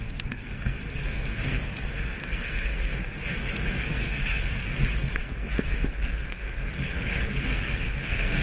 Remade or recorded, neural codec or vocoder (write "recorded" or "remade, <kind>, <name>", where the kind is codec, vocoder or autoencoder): remade, codec, SNAC